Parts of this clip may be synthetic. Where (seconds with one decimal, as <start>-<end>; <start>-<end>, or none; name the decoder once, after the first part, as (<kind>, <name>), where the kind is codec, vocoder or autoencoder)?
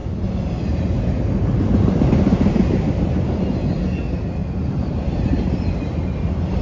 4.4-5.0 (vocoder, BigVGAN v2)